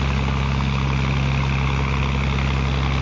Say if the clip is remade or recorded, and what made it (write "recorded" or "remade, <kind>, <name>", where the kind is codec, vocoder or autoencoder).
recorded